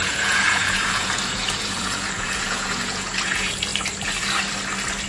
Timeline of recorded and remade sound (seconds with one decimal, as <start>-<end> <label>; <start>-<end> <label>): 0.0-3.7 remade; 3.7-5.1 recorded